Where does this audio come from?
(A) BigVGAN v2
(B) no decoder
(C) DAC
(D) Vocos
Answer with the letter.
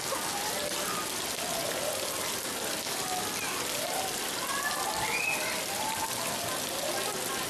B